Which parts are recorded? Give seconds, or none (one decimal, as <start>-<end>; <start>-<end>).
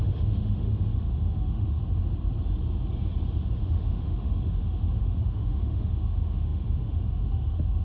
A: 1.8-3.5